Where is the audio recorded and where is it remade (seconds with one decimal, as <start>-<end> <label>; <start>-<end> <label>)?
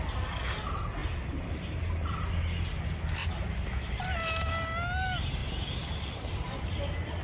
0.0-1.0 recorded; 1.0-2.3 remade; 2.3-3.2 recorded; 3.2-4.5 remade; 4.5-5.4 recorded; 5.4-6.6 remade; 6.6-7.2 recorded